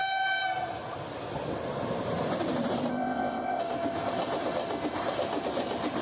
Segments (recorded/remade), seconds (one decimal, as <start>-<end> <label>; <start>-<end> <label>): 0.0-2.9 recorded; 2.9-3.6 remade; 3.6-6.0 recorded